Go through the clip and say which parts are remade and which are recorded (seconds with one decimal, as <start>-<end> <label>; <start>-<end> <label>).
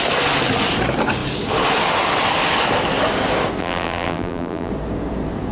0.0-3.6 recorded; 3.6-4.7 remade; 4.7-5.5 recorded